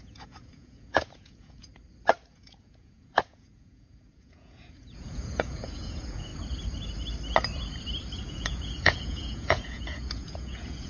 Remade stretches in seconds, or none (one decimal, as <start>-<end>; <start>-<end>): 0.0-1.7; 2.3-6.3; 8.2-10.9